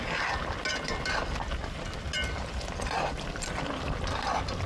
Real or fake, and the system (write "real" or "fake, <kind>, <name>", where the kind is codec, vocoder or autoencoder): real